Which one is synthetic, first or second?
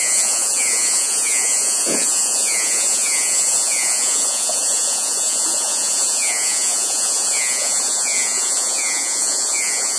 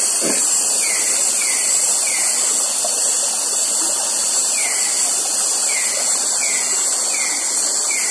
first